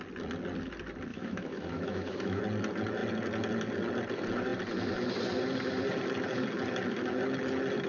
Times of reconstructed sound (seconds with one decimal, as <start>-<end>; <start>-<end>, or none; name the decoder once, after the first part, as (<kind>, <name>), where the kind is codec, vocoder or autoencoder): 1.1-2.4 (autoencoder, DAC-VAE)